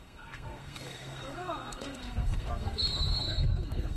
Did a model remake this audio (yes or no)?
yes